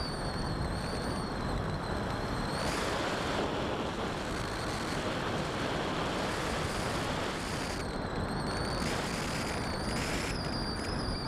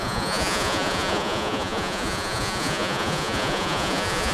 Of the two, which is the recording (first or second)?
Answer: first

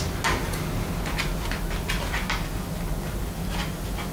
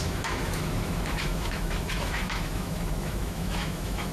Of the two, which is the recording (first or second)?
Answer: first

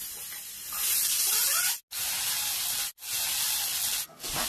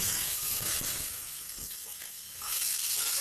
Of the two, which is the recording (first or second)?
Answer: first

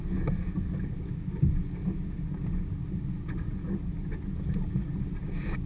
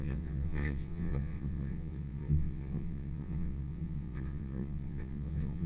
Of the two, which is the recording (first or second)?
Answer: first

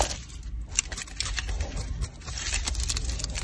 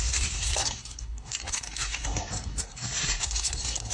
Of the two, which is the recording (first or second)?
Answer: first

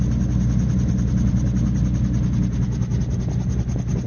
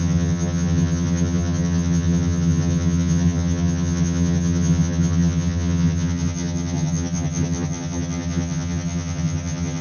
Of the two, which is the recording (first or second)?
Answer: first